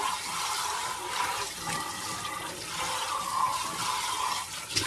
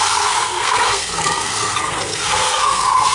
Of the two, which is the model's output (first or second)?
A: second